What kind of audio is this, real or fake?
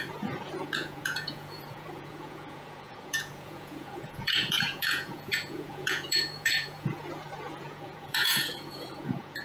fake